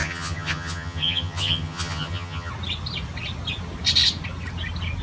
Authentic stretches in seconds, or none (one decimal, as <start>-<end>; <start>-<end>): 2.5-5.0